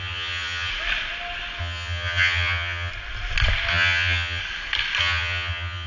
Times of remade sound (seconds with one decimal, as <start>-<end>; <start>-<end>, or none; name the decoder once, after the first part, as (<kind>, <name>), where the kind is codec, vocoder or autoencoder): 0.0-0.7 (vocoder, HiFi-GAN); 1.6-2.9; 3.7-4.4; 5.0-5.9